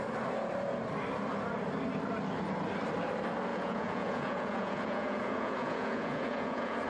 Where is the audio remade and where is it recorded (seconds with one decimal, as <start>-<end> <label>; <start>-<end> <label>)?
0.0-3.5 recorded; 3.5-6.9 remade